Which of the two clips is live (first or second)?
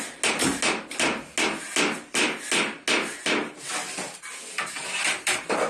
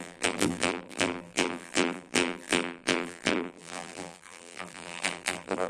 first